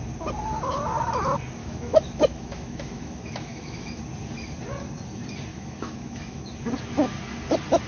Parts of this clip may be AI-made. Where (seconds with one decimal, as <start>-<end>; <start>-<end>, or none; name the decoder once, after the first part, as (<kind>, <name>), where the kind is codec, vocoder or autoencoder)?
1.6-4.0 (autoencoder, DAC-VAE); 5.5-6.5